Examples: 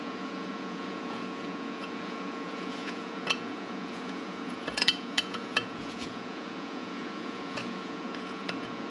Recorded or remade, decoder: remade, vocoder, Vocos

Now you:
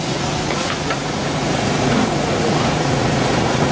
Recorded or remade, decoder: remade, vocoder, Vocos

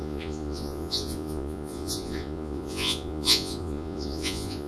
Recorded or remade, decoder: remade, vocoder, Vocos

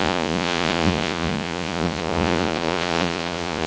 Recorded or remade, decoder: remade, vocoder, Vocos